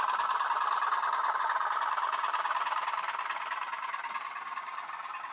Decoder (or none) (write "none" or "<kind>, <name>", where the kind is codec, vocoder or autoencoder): none